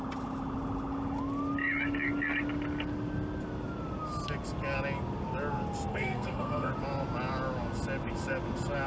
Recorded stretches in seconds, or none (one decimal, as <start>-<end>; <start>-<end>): 0.0-5.9; 6.7-8.9